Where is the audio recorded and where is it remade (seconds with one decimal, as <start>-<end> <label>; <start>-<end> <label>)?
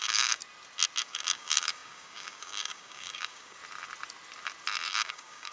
0.0-0.4 remade; 0.4-1.0 recorded; 1.0-3.6 remade; 3.6-4.9 recorded; 4.9-5.5 remade